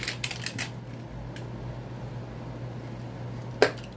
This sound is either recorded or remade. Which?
recorded